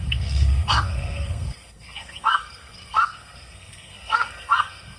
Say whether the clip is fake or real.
fake